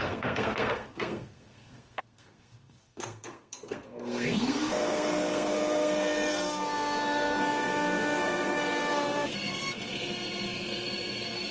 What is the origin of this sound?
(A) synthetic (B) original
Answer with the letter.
A